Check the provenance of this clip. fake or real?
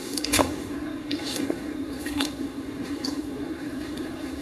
fake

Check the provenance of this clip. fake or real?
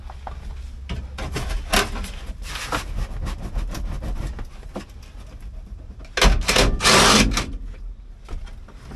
real